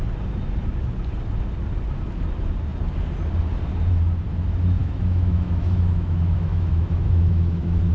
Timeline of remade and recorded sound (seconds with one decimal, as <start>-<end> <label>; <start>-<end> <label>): 0.0-4.8 recorded; 4.8-7.9 remade